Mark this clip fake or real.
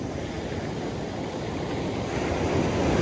real